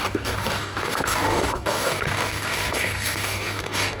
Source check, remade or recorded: remade